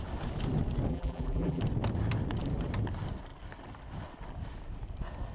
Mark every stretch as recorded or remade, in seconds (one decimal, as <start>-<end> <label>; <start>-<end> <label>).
0.0-0.9 recorded; 0.9-1.6 remade; 1.6-5.3 recorded